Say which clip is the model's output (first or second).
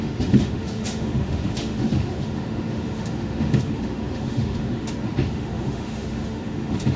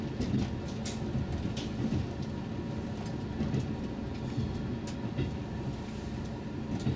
first